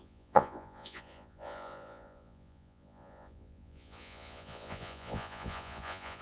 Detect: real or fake fake